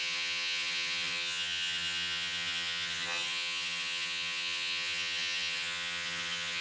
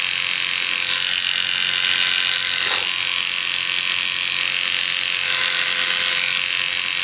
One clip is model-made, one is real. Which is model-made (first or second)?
first